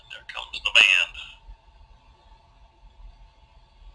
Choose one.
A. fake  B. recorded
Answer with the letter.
B